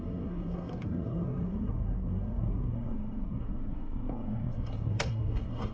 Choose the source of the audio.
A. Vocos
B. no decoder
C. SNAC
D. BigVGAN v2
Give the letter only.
C